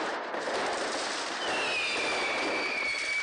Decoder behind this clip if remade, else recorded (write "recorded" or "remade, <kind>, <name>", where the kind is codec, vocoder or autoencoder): recorded